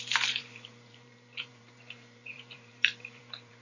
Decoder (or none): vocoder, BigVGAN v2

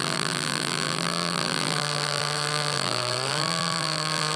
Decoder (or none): vocoder, BigVGAN v2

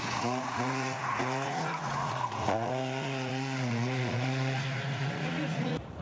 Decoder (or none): vocoder, Vocos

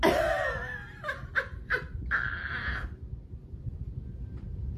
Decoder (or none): none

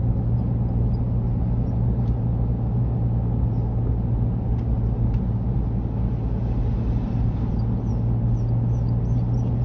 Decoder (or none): none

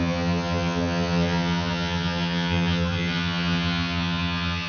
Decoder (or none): vocoder, HiFi-GAN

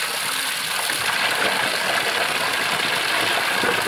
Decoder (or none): none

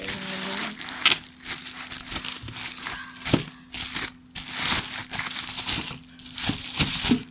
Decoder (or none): none